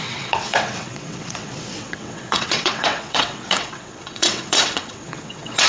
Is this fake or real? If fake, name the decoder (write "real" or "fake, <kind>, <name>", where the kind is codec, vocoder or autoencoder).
fake, vocoder, WaveNeXt